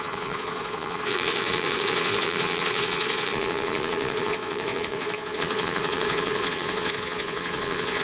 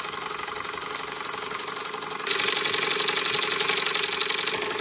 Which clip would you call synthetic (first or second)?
first